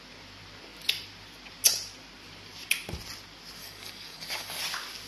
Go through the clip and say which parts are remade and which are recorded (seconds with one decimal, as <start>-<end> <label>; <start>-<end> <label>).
0.0-3.6 recorded; 3.6-4.6 remade; 4.6-5.1 recorded

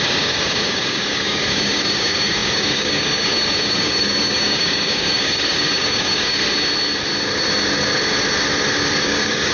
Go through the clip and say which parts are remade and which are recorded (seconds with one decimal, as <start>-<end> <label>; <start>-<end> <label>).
0.0-6.4 remade; 6.4-9.0 recorded; 9.0-9.5 remade

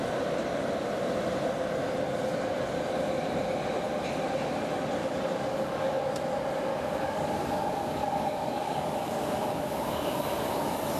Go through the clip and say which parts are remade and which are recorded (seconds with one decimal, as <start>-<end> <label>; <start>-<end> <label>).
0.0-5.0 recorded; 5.0-6.1 remade; 6.1-6.7 recorded; 6.7-10.5 remade; 10.5-11.0 recorded